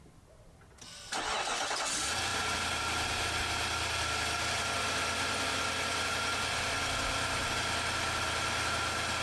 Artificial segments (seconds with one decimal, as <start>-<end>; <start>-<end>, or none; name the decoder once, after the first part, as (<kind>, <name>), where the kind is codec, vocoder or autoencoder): none